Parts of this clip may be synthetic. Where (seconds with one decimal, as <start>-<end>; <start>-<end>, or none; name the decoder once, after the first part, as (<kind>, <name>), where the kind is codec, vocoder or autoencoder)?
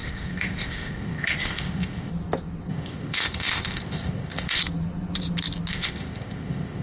0.0-2.1 (codec, ZipCodec); 2.7-4.6; 5.7-6.8